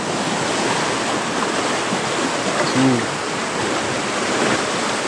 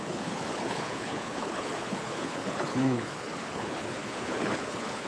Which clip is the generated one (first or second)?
second